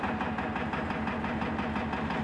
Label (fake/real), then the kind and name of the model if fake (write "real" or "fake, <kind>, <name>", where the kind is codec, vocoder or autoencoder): real